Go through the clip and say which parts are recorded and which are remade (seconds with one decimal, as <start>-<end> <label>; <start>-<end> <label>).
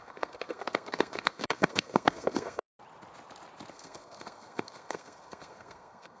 0.0-2.7 remade; 2.7-3.7 recorded; 3.7-6.2 remade